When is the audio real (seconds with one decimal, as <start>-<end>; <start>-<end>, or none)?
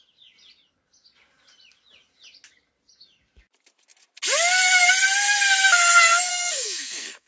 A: 0.0-6.3